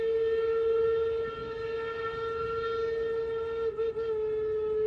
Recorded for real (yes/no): yes